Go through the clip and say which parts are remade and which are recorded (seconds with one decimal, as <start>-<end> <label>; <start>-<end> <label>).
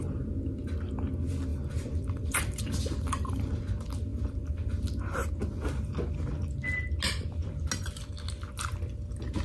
0.0-1.5 recorded; 1.5-3.6 remade; 3.6-4.1 recorded; 4.1-4.8 remade; 4.8-9.4 recorded